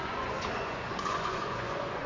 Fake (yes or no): yes